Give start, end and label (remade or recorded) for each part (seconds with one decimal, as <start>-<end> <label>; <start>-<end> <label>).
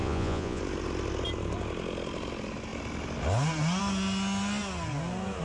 0.0-0.6 remade; 0.6-5.4 recorded